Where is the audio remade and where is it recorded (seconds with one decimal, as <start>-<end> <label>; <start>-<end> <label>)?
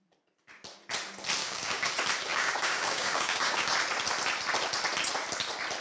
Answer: 0.0-1.4 recorded; 1.4-1.9 remade; 1.9-2.3 recorded; 2.3-3.7 remade; 3.7-5.8 recorded